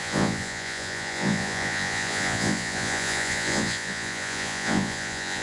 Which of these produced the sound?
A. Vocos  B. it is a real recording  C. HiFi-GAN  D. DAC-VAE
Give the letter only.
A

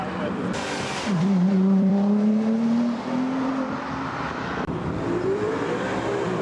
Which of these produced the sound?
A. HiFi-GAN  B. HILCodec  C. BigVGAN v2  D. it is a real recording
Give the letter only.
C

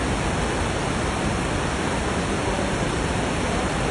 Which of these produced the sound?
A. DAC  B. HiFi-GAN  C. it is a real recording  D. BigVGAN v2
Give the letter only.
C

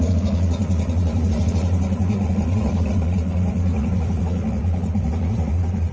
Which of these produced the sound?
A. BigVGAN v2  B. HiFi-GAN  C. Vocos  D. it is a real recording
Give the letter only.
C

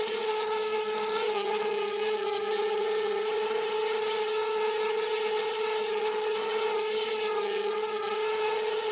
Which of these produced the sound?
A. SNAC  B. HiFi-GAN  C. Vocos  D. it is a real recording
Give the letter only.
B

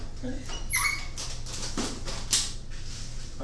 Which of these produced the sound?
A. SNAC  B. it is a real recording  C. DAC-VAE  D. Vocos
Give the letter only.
B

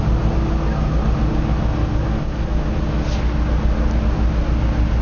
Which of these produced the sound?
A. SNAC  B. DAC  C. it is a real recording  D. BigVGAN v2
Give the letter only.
C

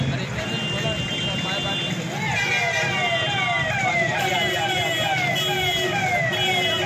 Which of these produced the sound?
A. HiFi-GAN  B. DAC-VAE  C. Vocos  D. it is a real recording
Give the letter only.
D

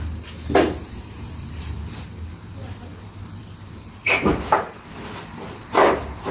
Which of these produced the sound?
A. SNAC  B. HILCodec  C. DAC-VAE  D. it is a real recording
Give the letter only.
D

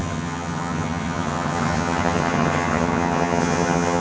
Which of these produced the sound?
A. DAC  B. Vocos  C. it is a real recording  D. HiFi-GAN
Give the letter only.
D